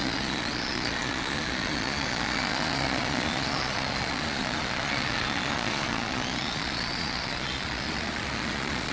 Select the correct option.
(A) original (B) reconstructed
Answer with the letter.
B